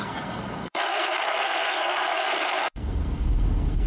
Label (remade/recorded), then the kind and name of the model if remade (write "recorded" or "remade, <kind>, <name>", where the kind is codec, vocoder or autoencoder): remade, codec, SNAC